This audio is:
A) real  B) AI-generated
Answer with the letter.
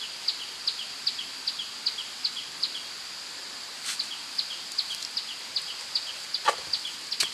A